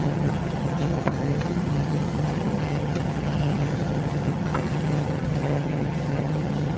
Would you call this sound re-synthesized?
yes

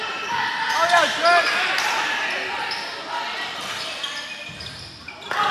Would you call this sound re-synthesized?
no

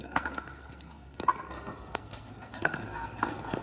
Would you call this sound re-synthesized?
yes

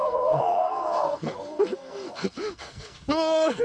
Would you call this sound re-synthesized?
yes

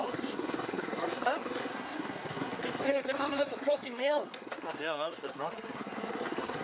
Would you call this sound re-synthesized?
yes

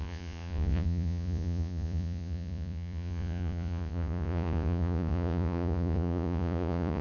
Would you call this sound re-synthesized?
yes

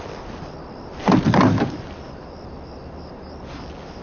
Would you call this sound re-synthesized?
no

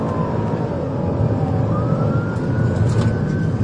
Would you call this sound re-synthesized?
no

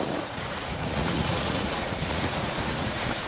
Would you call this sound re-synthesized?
yes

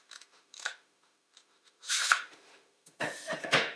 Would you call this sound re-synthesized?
yes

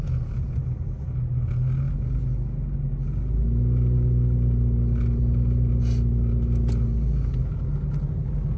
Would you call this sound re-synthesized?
no